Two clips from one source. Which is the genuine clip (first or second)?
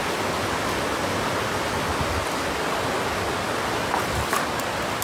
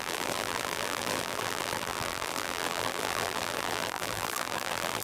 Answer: first